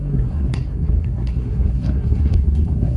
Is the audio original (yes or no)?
no